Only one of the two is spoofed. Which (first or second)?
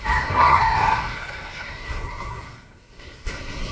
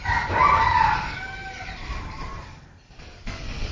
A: first